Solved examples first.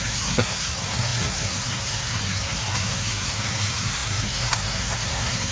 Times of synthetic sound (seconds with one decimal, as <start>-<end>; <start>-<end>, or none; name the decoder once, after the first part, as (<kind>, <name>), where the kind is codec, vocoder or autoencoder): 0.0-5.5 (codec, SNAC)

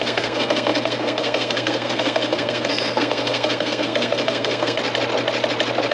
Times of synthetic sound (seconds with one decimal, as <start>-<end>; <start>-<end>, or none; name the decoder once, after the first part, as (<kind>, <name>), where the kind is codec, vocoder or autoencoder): 0.0-4.8 (codec, SNAC)

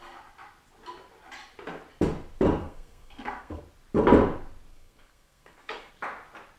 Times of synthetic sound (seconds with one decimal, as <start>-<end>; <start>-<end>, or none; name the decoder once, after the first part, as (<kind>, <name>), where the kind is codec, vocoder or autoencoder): 2.6-3.6 (codec, SNAC); 4.7-5.9

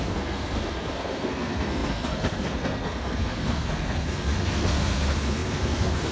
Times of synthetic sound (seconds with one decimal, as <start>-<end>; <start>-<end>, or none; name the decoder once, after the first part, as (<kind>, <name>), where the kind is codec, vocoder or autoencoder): 0.0-6.1 (codec, SNAC)

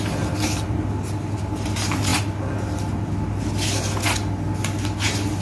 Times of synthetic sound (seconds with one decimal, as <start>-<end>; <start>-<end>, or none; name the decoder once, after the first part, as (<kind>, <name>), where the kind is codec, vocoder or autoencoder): none

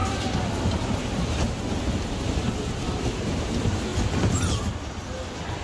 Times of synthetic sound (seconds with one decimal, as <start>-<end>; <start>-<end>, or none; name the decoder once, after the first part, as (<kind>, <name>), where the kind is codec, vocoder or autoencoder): none

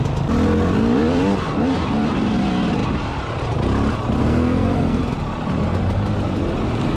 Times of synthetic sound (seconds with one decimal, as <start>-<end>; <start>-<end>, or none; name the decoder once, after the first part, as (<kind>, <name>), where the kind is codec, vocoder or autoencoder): 4.2-5.0 (codec, SNAC)